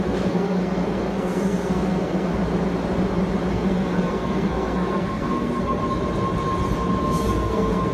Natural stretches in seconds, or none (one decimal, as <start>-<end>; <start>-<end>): 2.4-3.5; 5.8-7.0